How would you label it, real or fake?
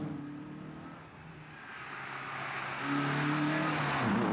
real